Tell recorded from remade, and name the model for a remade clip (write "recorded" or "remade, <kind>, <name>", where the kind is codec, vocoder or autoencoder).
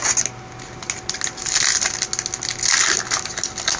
recorded